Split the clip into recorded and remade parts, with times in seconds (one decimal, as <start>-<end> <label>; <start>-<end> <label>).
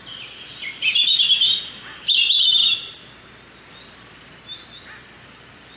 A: 0.0-5.8 recorded